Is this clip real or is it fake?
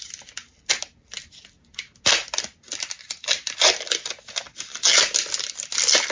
real